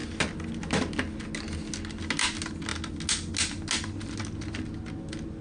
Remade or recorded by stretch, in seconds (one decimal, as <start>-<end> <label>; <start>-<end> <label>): 0.0-5.4 recorded